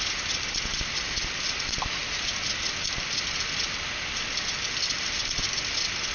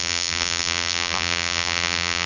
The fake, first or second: second